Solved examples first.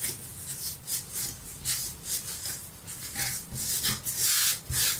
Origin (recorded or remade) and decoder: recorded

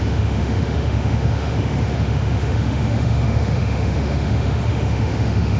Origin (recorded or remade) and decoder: remade, autoencoder, DAC-VAE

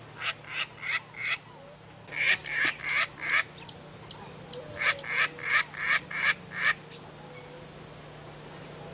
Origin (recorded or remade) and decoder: recorded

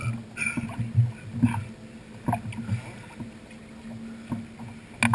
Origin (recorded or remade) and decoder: recorded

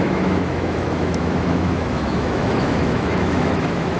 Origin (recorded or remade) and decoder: remade, autoencoder, DAC-VAE